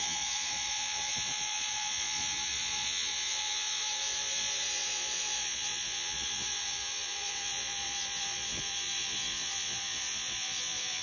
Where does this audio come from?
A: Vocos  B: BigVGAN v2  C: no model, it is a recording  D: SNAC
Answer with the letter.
A